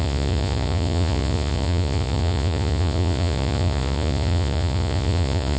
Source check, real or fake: fake